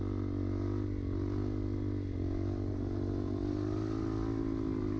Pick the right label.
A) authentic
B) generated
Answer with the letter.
A